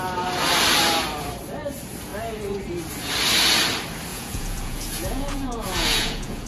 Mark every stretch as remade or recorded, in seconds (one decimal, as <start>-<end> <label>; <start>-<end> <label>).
0.0-4.1 recorded; 4.1-6.5 remade